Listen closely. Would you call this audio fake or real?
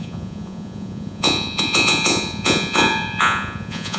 fake